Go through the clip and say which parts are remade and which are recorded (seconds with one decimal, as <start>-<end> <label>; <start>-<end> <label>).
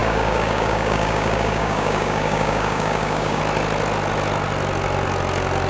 0.0-3.4 remade; 3.4-5.7 recorded